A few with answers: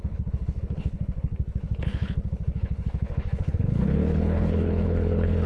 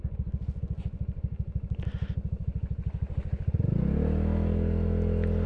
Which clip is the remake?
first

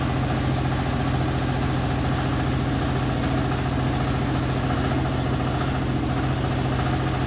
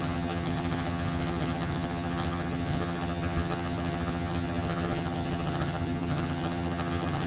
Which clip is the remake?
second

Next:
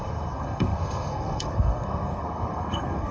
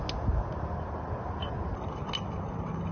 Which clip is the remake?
first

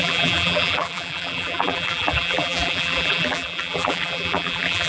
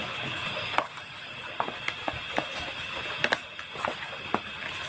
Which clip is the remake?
first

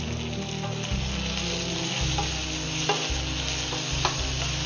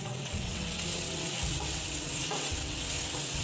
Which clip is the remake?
second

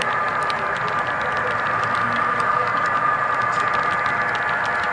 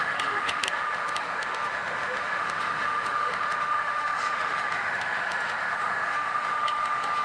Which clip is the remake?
second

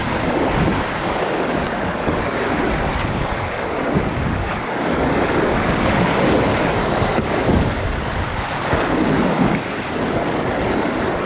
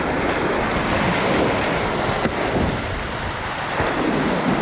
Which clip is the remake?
first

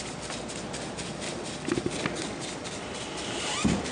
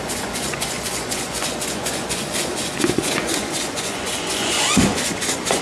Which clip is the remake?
second